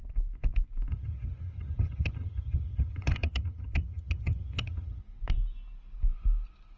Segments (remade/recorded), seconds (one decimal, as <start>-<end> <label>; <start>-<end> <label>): 0.0-0.9 recorded; 0.9-5.0 remade; 5.0-6.8 recorded